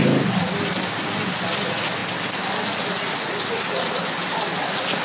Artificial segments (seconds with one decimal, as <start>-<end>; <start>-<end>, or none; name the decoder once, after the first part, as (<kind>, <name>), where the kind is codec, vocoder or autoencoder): none